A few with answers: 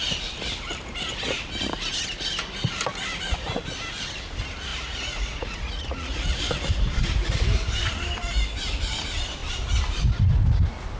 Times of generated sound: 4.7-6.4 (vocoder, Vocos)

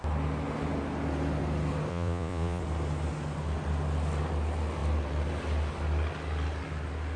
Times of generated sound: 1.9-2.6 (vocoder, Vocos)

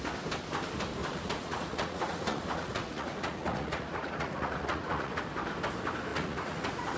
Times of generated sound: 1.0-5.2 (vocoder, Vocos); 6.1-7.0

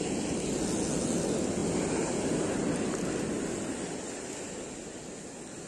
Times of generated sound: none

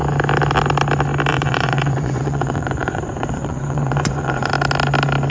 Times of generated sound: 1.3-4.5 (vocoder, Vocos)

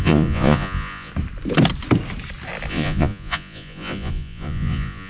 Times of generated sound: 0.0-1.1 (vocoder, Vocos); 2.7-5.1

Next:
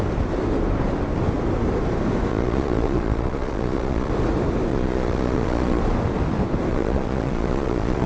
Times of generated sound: 2.3-4.1 (vocoder, Vocos); 4.7-5.8; 6.7-8.1